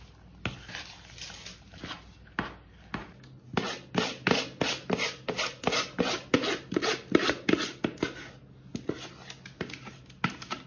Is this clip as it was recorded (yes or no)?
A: yes